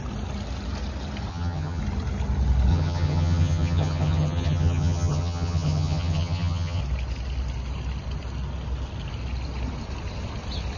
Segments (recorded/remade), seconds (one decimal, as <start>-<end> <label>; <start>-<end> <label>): 0.0-1.3 recorded; 1.3-1.8 remade; 1.8-2.7 recorded; 2.7-6.8 remade; 6.8-10.8 recorded